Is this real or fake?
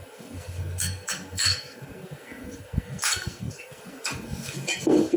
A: fake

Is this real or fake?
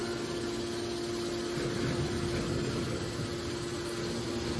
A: real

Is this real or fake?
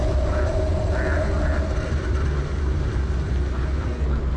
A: real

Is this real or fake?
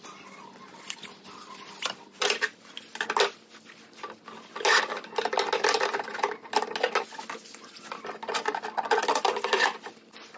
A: real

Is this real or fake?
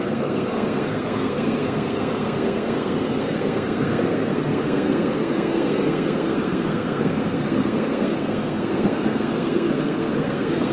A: fake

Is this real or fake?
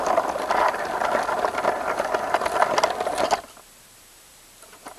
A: real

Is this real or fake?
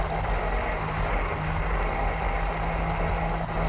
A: real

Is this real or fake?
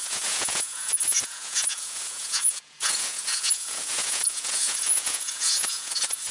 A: fake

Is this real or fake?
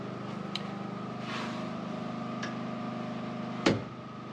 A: real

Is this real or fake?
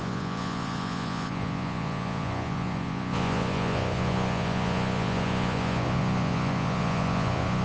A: fake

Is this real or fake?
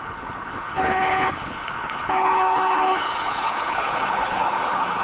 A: fake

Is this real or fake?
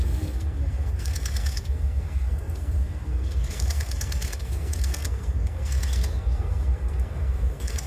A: fake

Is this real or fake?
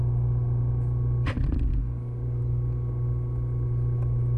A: real